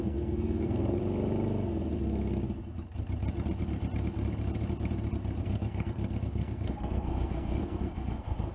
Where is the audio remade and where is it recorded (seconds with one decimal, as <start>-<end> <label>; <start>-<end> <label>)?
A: 0.0-1.0 remade; 1.0-5.4 recorded; 5.4-8.5 remade